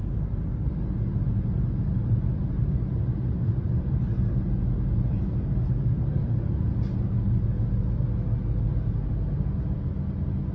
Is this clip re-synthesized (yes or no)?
no